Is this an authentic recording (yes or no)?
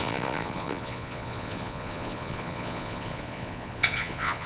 no